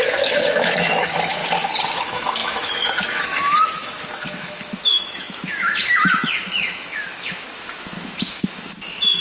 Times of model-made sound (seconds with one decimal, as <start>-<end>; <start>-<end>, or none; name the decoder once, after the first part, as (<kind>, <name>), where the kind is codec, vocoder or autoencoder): 0.0-1.4 (autoencoder, DAC-VAE); 2.0-9.2